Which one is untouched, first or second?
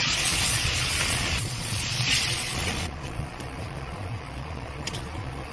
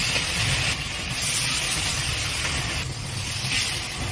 second